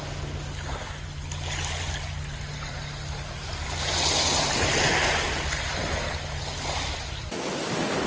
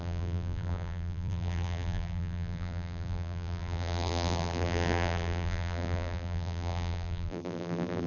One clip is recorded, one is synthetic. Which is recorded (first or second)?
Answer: first